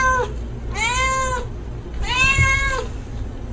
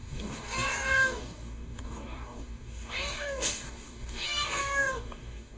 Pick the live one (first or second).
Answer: first